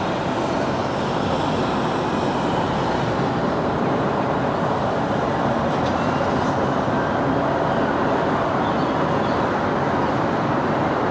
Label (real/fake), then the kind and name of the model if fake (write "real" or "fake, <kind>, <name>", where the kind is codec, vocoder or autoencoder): real